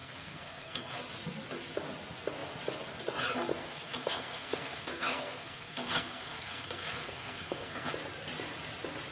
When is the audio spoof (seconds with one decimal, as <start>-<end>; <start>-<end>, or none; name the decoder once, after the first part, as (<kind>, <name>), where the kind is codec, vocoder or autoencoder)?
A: 0.0-1.0 (codec, SNAC); 3.5-7.9